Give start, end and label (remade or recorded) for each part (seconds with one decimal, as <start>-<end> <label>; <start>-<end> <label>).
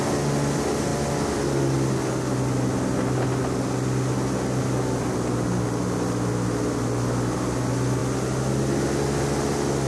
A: 0.0-9.9 recorded